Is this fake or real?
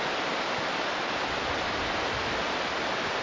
real